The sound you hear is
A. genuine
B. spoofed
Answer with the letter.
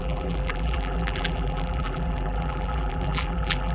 B